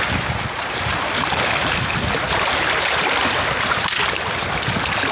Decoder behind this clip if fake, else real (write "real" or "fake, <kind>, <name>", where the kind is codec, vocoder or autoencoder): real